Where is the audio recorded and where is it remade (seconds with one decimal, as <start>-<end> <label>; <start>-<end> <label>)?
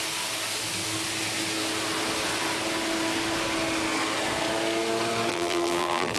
0.0-5.3 recorded; 5.3-6.2 remade